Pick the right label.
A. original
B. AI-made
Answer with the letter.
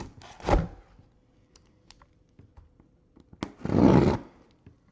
A